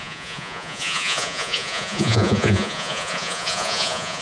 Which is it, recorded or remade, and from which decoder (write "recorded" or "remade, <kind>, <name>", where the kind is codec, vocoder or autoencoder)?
remade, vocoder, Vocos